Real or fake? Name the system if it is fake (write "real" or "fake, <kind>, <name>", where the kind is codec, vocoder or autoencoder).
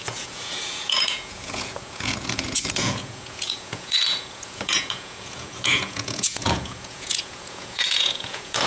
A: fake, vocoder, Vocos